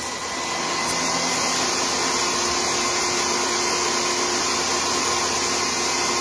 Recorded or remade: recorded